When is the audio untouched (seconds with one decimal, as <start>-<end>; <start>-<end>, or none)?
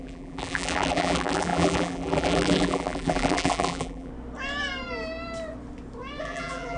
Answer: 4.1-6.2